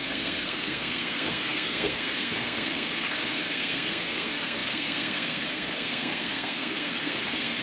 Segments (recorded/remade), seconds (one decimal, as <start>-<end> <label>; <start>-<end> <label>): 0.0-7.6 remade